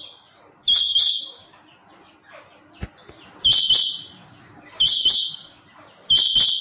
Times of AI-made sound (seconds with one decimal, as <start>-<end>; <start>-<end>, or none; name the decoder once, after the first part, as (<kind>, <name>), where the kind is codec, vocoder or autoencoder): 0.6-1.6 (codec, DAC); 4.2-5.6